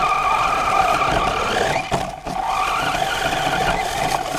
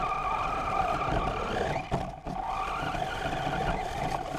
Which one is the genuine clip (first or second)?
first